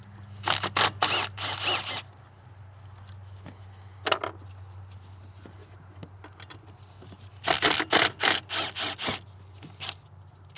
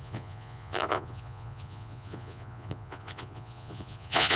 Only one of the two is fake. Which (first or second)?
second